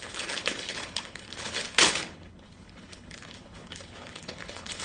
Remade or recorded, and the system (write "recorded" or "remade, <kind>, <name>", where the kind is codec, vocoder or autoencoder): remade, codec, HILCodec